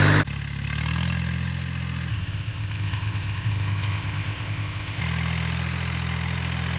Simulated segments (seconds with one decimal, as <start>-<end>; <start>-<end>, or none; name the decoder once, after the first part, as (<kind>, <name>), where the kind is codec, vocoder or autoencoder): 2.1-5.0 (codec, ZipCodec)